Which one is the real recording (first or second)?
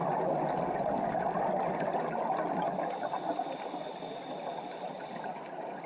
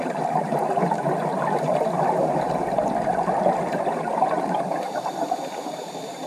first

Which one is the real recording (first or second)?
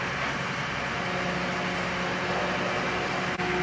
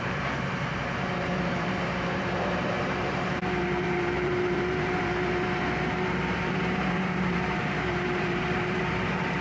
first